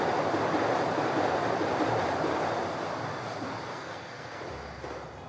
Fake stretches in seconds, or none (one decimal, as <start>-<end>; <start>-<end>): 3.7-4.4